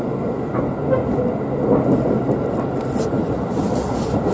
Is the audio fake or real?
real